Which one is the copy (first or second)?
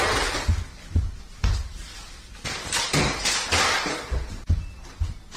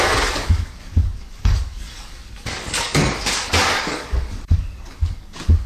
second